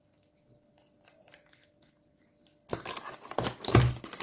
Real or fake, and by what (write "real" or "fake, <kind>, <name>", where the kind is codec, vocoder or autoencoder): real